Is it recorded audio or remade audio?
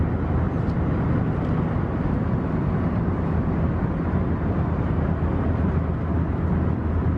recorded